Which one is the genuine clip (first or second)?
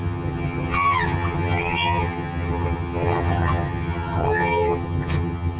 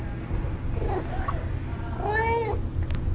second